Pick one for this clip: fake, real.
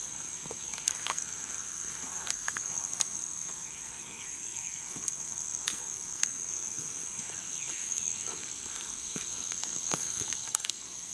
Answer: fake